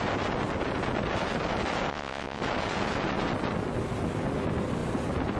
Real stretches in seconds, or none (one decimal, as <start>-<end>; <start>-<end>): 0.0-1.9; 2.4-5.4